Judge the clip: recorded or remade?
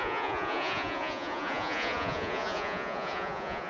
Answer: remade